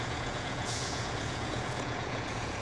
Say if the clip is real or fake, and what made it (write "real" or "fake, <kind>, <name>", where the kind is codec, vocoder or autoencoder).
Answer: fake, vocoder, Vocos